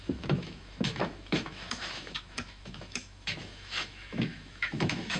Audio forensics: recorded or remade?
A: remade